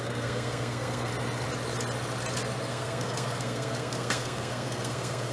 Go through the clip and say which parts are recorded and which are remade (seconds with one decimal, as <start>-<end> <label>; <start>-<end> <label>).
0.0-1.1 remade; 1.1-2.7 recorded; 2.7-5.3 remade